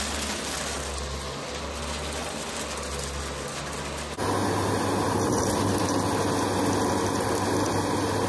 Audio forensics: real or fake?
real